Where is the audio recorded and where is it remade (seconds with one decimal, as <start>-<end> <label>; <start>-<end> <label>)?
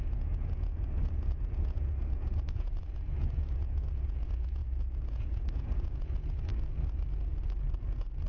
0.0-4.6 remade; 4.6-5.1 recorded; 5.1-6.5 remade; 6.5-8.3 recorded